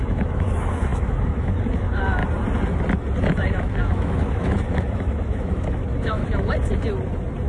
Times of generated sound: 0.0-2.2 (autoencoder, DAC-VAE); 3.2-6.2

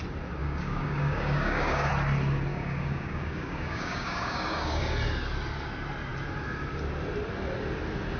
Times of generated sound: 0.4-1.9 (codec, DAC); 2.5-4.8

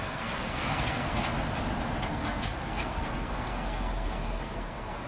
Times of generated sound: 0.0-1.3 (codec, SNAC); 2.1-5.1